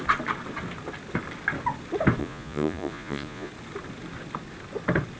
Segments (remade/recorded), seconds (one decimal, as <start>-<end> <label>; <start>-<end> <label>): 0.0-2.2 recorded; 2.2-3.5 remade; 3.5-5.2 recorded